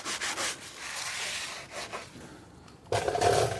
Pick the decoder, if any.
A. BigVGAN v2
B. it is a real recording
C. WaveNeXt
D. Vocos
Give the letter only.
B